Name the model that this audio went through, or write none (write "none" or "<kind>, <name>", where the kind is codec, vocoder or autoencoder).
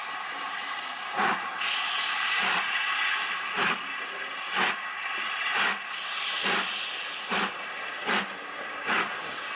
none